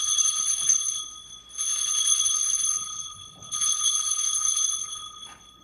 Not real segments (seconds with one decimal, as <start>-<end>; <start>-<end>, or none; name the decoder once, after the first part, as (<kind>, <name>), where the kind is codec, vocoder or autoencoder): 0.0-1.0 (codec, HILCodec); 2.2-5.6